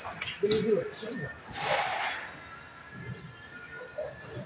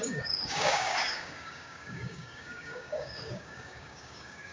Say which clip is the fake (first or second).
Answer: second